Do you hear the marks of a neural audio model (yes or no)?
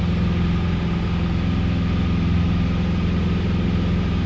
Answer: no